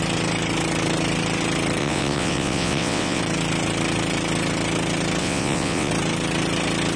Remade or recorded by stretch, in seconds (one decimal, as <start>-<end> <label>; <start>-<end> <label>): 0.0-1.8 recorded; 1.8-3.2 remade; 3.2-5.2 recorded; 5.2-5.9 remade; 5.9-7.0 recorded